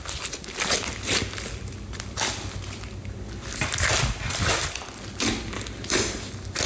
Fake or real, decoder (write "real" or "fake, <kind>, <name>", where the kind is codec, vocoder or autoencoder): real